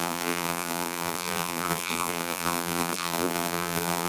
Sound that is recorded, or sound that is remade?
remade